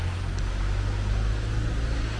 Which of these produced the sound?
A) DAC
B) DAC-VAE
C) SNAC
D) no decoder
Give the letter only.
D